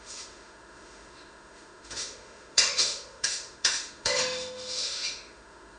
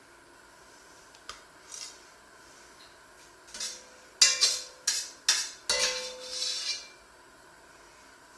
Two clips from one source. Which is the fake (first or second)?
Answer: first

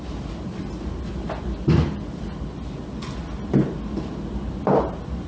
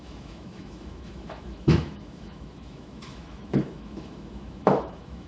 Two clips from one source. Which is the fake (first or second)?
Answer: second